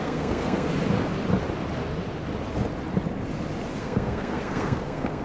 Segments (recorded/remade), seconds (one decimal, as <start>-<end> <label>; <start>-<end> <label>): 0.0-0.7 remade; 0.7-3.8 recorded; 3.8-5.2 remade

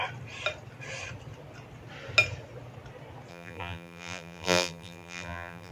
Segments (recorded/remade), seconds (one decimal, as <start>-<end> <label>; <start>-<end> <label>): 0.0-3.3 recorded; 3.3-5.7 remade

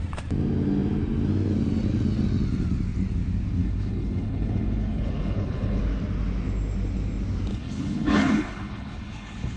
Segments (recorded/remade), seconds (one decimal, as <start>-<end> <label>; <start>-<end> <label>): 0.0-3.6 recorded; 3.6-5.8 remade; 5.8-7.5 recorded; 7.5-9.6 remade

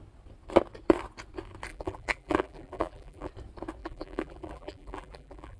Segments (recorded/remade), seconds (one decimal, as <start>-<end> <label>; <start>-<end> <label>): 0.0-1.7 recorded; 1.7-3.3 remade; 3.3-3.8 recorded; 3.8-5.6 remade

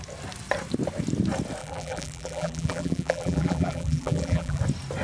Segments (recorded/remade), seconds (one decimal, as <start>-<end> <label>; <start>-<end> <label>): 0.0-1.6 recorded; 1.6-4.6 remade; 4.6-5.0 recorded